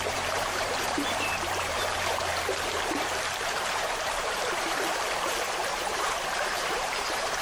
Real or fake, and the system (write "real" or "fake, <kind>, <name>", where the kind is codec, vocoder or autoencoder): fake, vocoder, BigVGAN v2